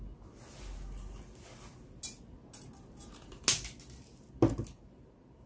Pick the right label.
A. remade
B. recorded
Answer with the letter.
B